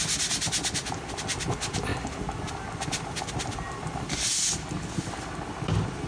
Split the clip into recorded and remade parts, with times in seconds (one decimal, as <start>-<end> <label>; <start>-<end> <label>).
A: 0.0-6.1 recorded